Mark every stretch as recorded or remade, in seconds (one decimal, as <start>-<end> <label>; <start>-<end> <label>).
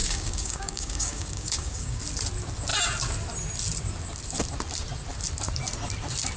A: 0.0-2.0 remade; 2.0-6.4 recorded